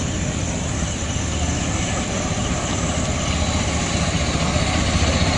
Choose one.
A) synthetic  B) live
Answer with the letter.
B